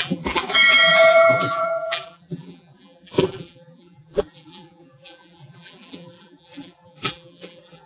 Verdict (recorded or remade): remade